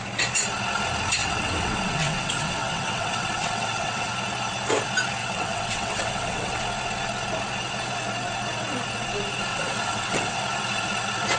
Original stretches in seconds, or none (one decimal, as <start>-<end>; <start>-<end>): 0.0-1.2; 4.1-5.2; 6.6-9.5; 10.4-11.4